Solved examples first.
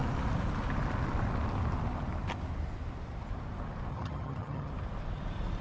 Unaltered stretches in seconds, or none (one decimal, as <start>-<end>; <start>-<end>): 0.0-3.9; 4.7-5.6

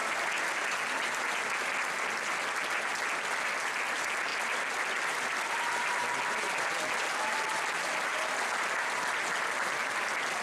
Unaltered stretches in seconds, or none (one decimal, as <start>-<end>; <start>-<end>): 0.0-10.4

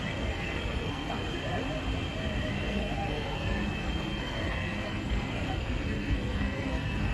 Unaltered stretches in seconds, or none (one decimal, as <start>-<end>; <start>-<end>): 1.4-2.5

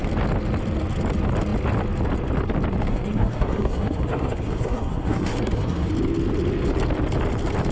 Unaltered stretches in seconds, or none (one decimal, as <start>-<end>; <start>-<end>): 0.0-2.9; 5.9-7.7

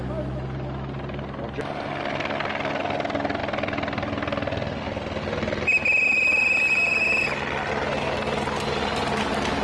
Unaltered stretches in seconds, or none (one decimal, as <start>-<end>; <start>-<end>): 0.0-9.6

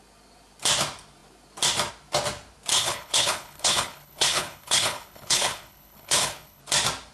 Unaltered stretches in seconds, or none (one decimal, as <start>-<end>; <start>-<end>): 0.0-2.7; 6.6-7.1